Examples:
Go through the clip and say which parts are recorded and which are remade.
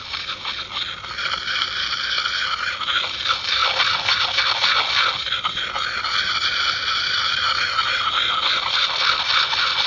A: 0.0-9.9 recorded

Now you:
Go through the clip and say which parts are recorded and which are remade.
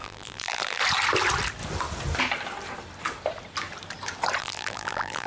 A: 0.0-0.8 remade; 0.8-4.4 recorded; 4.4-5.3 remade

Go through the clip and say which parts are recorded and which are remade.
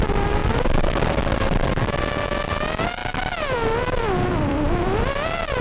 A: 0.0-0.4 recorded; 0.4-2.0 remade; 2.0-3.0 recorded; 3.0-5.0 remade; 5.0-5.6 recorded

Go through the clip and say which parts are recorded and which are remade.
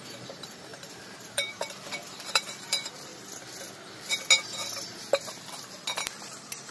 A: 0.0-3.1 remade; 3.1-6.2 recorded; 6.2-6.7 remade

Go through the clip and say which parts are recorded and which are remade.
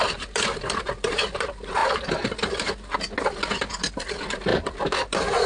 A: 0.0-1.8 remade; 1.8-3.7 recorded; 3.7-5.5 remade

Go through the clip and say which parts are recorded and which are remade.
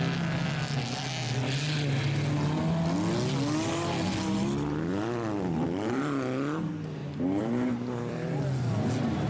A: 0.0-7.0 recorded; 7.0-8.4 remade; 8.4-9.3 recorded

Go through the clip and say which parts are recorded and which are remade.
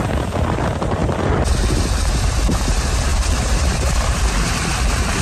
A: 0.0-3.1 recorded; 3.1-4.2 remade; 4.2-5.2 recorded